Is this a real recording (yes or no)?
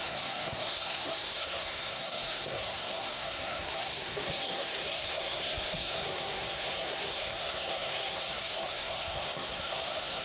no